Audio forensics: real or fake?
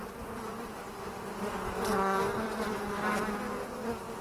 real